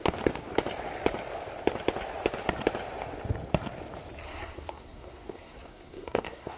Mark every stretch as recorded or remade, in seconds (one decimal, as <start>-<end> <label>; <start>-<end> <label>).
0.0-4.2 recorded; 4.2-6.6 remade